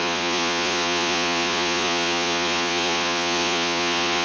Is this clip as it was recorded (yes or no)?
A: no